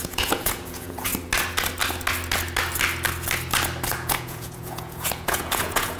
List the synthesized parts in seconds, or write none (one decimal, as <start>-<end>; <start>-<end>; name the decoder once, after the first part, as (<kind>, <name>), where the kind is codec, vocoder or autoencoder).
0.0-1.1 (vocoder, Vocos); 3.9-6.0